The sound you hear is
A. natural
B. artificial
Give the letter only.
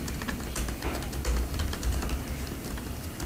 B